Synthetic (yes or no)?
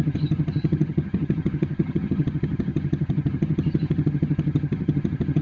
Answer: yes